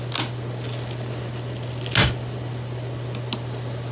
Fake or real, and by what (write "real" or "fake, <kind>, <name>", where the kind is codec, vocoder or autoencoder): real